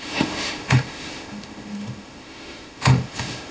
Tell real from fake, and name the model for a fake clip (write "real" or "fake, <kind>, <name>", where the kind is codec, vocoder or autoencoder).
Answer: fake, autoencoder, DAC-VAE